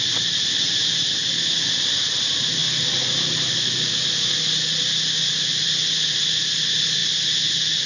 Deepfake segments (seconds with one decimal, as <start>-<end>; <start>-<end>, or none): none

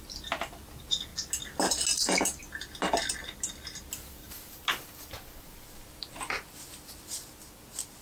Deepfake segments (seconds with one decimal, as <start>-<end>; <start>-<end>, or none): none

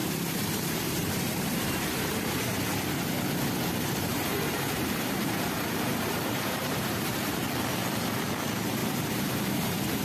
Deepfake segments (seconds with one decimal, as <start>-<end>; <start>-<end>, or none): 0.0-2.6; 4.1-7.4; 8.8-9.4

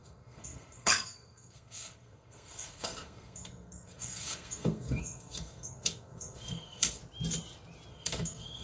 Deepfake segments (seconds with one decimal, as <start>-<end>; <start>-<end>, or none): 0.0-7.0; 7.9-8.6

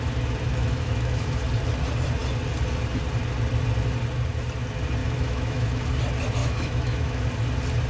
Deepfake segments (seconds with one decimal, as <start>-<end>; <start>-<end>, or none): 0.5-1.4; 5.0-5.7; 6.4-7.2